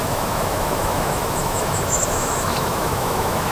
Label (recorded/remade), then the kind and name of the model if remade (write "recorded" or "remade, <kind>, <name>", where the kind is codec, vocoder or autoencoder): remade, autoencoder, DAC-VAE